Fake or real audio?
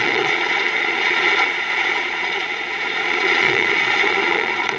fake